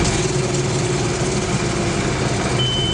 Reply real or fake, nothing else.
real